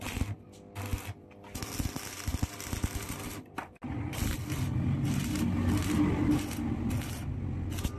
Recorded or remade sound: recorded